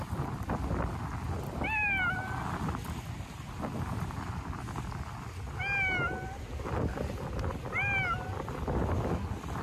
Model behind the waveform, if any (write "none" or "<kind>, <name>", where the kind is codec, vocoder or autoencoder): none